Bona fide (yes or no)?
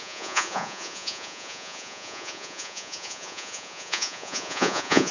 no